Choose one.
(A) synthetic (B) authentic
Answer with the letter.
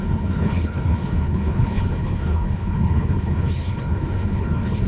A